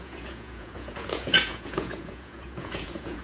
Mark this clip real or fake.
fake